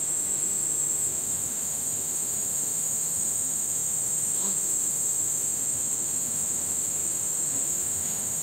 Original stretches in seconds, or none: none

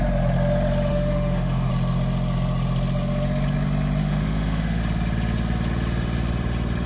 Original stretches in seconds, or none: 0.0-0.9; 1.7-4.0; 4.8-6.9

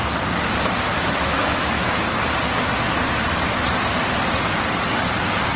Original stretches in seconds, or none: 0.0-0.9; 2.2-5.6

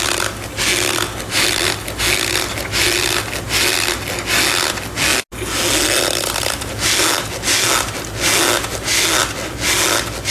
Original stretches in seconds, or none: 0.0-10.3